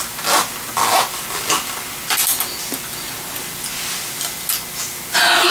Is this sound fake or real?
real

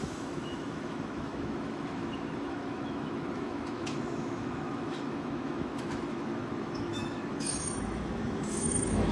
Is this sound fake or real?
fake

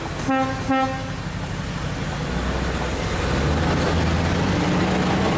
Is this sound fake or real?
real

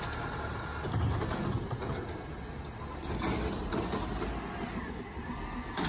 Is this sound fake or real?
real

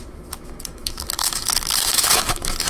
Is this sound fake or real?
fake